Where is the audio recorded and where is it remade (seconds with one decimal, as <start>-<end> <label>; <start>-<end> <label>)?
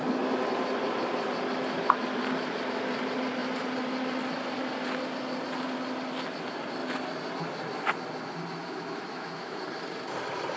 0.0-8.6 recorded; 8.6-9.6 remade; 9.6-10.6 recorded